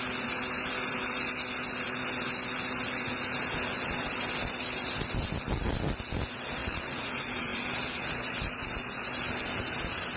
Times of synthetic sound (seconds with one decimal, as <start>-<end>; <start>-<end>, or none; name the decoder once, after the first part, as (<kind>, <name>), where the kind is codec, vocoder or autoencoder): 6.6-7.1 (vocoder, Vocos)